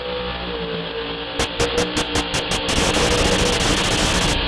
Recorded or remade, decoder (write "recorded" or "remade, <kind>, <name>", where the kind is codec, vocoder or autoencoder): recorded